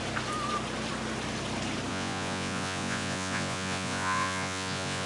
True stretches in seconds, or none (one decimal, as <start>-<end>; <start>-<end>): 0.0-1.9